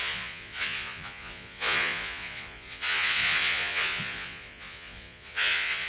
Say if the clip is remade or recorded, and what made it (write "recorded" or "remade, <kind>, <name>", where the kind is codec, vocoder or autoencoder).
remade, vocoder, Vocos